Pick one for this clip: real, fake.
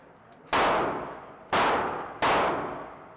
real